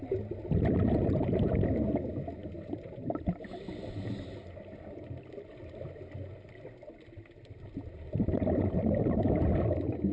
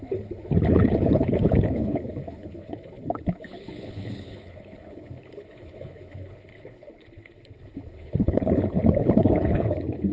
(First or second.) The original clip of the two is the first